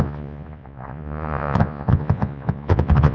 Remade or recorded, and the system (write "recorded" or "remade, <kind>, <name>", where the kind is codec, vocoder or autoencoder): remade, vocoder, Vocos